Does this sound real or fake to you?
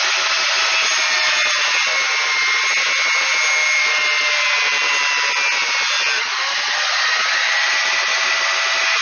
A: real